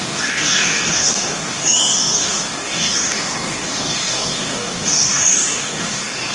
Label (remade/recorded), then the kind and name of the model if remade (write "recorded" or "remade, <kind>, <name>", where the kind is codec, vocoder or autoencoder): remade, codec, DAC